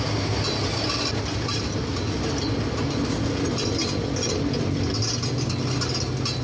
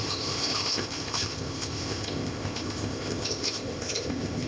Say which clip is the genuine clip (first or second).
first